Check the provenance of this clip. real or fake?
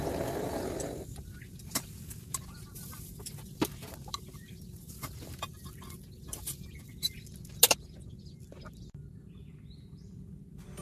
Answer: real